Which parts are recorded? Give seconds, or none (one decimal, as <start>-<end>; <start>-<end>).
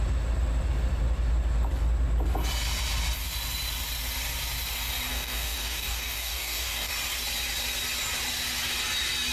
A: 0.0-5.1; 6.9-9.3